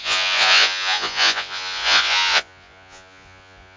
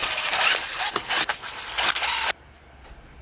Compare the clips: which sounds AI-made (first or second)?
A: first